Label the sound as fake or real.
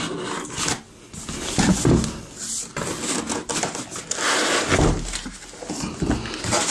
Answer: real